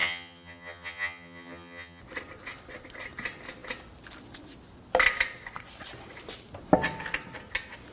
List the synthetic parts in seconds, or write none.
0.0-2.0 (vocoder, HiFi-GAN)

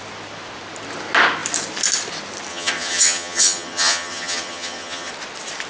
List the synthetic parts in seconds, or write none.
2.5-5.1 (vocoder, HiFi-GAN)

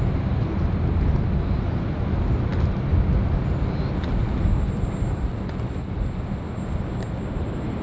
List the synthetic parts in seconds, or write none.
none

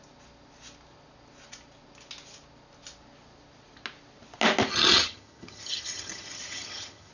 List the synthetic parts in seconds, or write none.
4.7-7.1 (vocoder, HiFi-GAN)

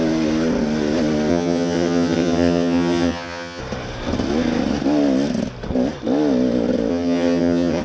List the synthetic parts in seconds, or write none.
1.3-3.6 (vocoder, HiFi-GAN); 6.9-7.8

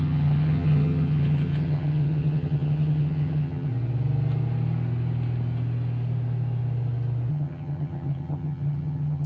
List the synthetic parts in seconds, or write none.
0.0-3.7 (vocoder, HiFi-GAN); 7.3-9.3

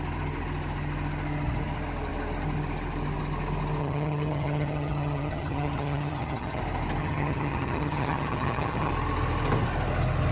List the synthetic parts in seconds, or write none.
3.8-6.6 (vocoder, HiFi-GAN); 7.0-8.9

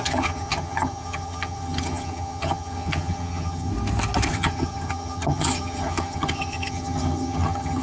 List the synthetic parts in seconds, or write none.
0.0-3.7 (vocoder, HiFi-GAN); 4.3-7.8